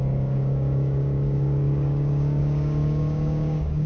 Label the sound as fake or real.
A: fake